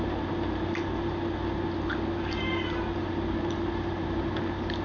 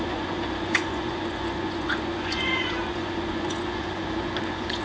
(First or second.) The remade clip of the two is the second